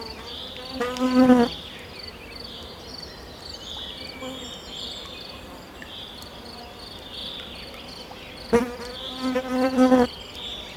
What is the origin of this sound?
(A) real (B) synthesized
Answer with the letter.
A